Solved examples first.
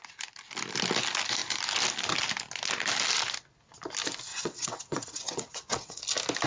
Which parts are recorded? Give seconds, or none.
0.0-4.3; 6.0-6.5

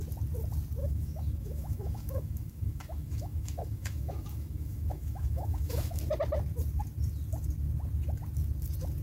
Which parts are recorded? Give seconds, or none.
0.0-0.8; 6.0-9.0